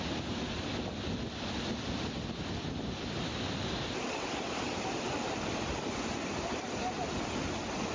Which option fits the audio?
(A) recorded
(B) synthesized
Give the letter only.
A